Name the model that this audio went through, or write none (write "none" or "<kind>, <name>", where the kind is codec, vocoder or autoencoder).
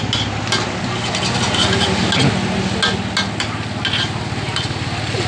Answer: none